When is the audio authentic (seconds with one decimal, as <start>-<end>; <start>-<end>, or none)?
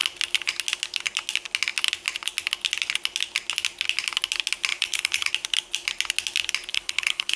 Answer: 0.0-4.7; 5.3-6.7